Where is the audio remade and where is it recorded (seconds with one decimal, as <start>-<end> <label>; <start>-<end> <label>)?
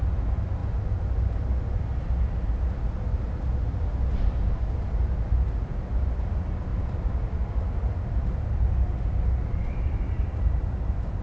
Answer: 0.0-6.7 recorded; 6.7-11.2 remade